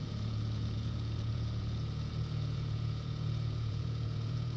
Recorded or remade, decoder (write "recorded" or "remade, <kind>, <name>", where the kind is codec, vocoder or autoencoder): remade, vocoder, Vocos